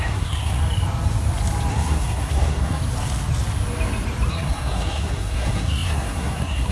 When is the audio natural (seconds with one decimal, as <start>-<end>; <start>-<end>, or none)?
0.6-1.7; 2.8-4.3